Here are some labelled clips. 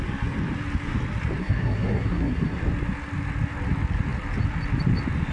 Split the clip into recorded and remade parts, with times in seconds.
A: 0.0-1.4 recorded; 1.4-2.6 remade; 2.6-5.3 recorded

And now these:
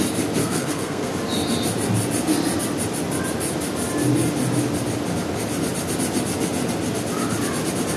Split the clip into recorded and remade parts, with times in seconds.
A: 0.0-0.4 recorded; 0.4-1.1 remade; 1.1-8.0 recorded

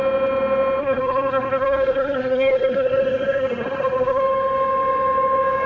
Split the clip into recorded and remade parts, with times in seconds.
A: 0.0-0.8 recorded; 0.8-4.2 remade; 4.2-5.7 recorded

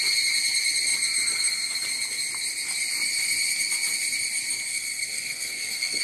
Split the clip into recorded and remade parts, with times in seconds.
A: 0.0-4.7 recorded; 4.7-6.0 remade

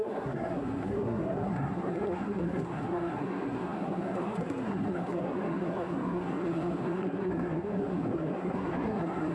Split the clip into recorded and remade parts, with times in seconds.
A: 0.0-9.3 remade

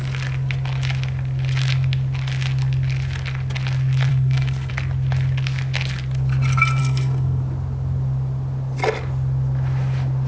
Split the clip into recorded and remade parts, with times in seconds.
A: 0.0-4.1 recorded; 4.1-4.7 remade; 4.7-6.8 recorded; 6.8-7.4 remade; 7.4-10.3 recorded

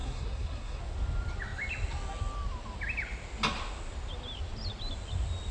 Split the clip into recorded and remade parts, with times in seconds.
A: 0.0-0.8 remade; 0.8-5.5 recorded

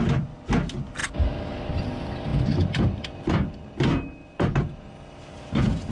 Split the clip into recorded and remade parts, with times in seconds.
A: 0.0-5.9 recorded